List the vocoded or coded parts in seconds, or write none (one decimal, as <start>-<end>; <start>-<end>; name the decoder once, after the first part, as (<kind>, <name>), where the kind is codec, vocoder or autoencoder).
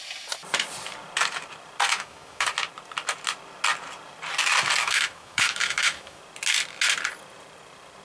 1.9-2.5 (autoencoder, DAC-VAE); 4.8-6.2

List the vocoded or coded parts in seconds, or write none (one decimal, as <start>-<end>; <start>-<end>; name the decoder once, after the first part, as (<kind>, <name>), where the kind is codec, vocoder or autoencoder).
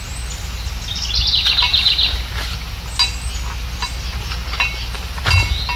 none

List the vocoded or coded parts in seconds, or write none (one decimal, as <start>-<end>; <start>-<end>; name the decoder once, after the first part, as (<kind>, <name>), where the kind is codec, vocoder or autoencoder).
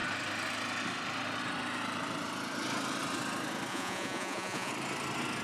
3.7-4.7 (vocoder, Vocos)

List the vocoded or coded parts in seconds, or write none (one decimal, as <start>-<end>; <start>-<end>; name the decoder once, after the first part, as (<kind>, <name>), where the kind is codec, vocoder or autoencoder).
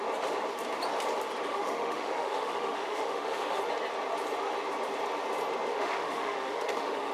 1.5-3.6 (autoencoder, DAC-VAE); 5.7-7.1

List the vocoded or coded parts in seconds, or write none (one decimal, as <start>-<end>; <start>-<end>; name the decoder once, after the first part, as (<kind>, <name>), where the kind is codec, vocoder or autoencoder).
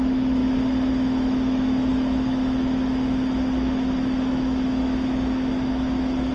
0.0-0.4 (autoencoder, DAC-VAE); 0.9-6.3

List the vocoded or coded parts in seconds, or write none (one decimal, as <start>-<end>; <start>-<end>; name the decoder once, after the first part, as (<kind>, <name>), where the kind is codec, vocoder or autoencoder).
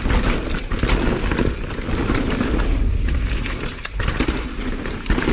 2.0-5.3 (vocoder, BigVGAN v2)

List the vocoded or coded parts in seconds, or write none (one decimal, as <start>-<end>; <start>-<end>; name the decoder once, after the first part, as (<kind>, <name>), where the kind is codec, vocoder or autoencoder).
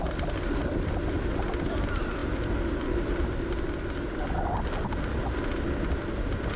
none